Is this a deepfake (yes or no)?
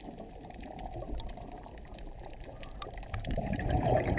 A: yes